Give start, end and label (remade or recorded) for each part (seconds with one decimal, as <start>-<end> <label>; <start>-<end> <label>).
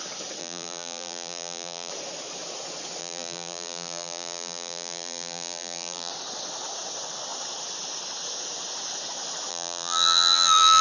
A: 0.0-0.4 recorded; 0.4-1.9 remade; 1.9-3.0 recorded; 3.0-6.1 remade; 6.1-9.5 recorded; 9.5-10.8 remade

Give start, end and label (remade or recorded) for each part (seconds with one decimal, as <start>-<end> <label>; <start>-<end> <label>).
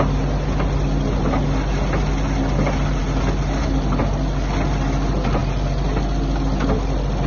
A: 0.0-7.3 recorded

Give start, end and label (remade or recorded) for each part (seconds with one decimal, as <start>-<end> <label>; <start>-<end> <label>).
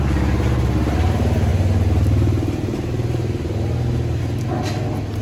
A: 0.0-5.2 recorded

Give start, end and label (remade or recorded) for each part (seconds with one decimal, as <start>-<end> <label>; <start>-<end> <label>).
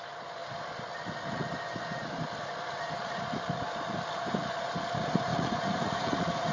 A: 0.0-5.3 recorded; 5.3-6.5 remade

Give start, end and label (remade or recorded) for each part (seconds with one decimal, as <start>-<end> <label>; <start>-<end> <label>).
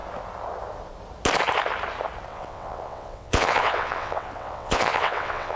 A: 0.0-2.3 recorded; 2.3-5.6 remade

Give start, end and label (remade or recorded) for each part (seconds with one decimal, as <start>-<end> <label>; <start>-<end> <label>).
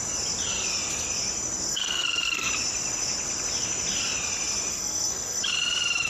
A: 0.0-1.7 recorded; 1.7-2.5 remade; 2.5-4.7 recorded; 4.7-5.4 remade; 5.4-6.1 recorded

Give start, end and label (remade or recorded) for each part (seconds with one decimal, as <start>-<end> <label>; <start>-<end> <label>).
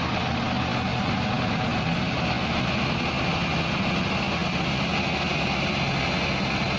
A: 0.0-6.8 recorded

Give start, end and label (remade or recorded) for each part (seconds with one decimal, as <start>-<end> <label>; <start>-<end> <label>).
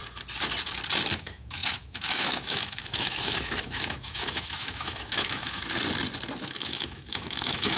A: 0.0-1.2 recorded; 1.2-5.6 remade; 5.6-6.4 recorded; 6.4-7.8 remade